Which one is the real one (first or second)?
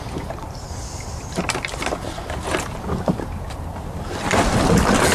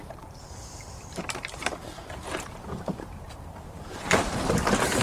first